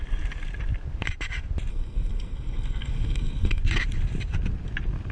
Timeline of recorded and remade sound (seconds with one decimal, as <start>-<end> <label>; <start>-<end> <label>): 0.0-1.7 recorded; 1.7-3.6 remade; 3.6-5.1 recorded